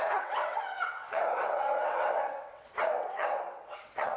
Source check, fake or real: fake